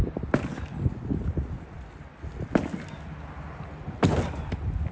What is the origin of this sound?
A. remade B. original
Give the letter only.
B